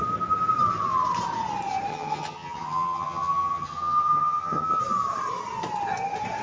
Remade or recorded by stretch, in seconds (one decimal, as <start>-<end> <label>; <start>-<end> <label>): 0.0-1.9 recorded; 1.9-4.8 remade; 4.8-6.4 recorded